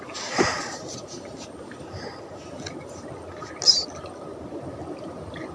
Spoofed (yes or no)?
no